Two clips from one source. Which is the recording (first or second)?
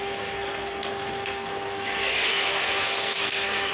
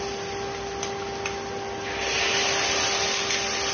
second